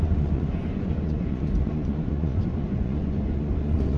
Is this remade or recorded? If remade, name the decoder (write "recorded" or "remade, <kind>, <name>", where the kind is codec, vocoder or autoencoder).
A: remade, vocoder, Vocos